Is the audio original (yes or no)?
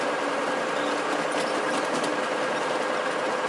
yes